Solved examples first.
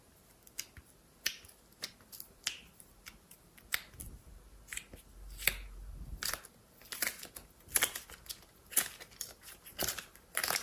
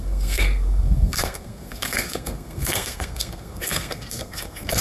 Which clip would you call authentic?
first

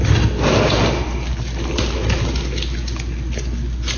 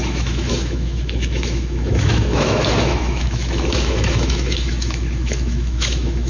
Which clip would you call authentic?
first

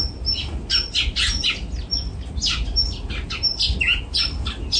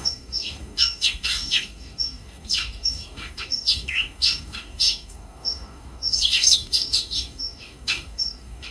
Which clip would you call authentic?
first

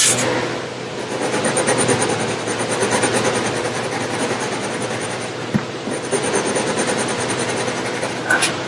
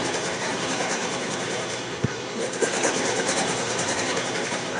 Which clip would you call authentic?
first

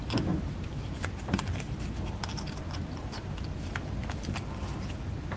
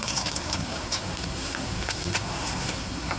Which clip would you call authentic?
first